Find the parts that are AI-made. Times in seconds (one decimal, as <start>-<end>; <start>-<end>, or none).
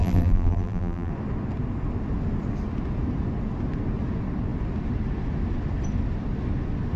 0.0-1.1